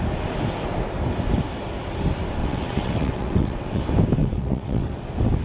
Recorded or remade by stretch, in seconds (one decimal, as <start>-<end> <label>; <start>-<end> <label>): 0.0-2.4 recorded; 2.4-3.8 remade; 3.8-4.2 recorded; 4.2-4.9 remade; 4.9-5.4 recorded